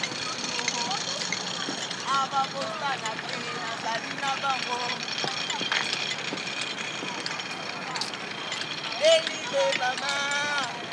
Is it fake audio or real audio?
real